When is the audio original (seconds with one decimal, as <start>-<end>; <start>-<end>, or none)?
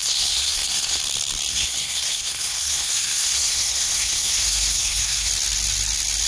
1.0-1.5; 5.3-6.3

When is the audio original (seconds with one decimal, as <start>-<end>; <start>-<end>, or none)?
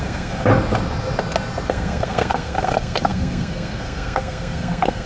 0.5-1.7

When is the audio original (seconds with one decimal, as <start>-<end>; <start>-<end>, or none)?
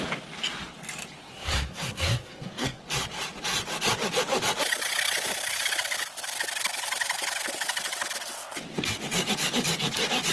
0.0-1.3; 2.8-10.3